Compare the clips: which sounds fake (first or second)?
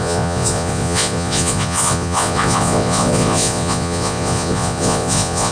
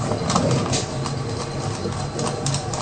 first